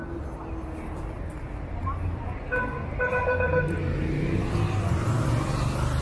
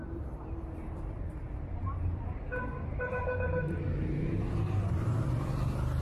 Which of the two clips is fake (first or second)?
second